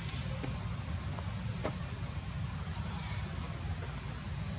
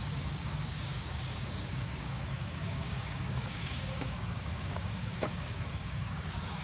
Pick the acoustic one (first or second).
first